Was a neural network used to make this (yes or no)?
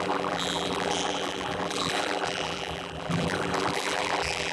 yes